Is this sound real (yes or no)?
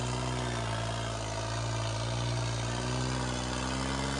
yes